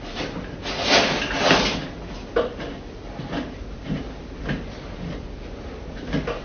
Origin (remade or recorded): recorded